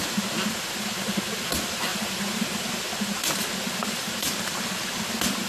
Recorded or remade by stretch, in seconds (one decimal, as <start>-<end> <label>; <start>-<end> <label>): 0.0-1.9 recorded; 1.9-2.6 remade; 2.6-5.5 recorded